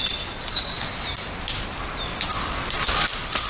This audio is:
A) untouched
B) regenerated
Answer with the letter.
A